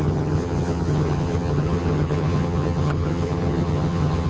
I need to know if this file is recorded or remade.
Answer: remade